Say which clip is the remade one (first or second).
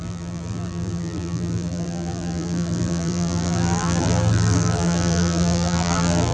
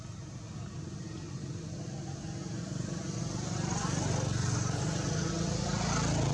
first